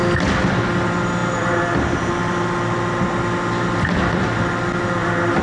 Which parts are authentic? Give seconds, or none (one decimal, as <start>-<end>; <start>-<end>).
0.0-5.4